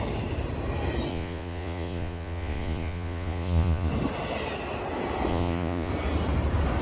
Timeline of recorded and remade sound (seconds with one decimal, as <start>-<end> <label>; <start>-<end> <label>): 0.0-1.1 recorded; 1.1-3.9 remade; 3.9-5.3 recorded; 5.3-5.9 remade; 5.9-6.8 recorded